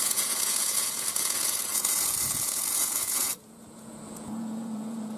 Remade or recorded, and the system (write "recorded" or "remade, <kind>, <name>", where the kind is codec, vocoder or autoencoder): remade, vocoder, Vocos